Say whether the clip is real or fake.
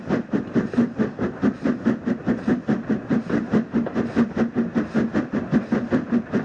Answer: real